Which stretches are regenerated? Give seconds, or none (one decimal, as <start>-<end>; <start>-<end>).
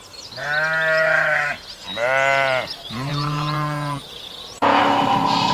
3.1-4.8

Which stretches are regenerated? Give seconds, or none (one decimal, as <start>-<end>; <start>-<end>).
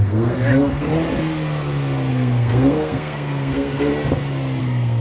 0.0-0.9; 2.1-3.9; 4.6-5.0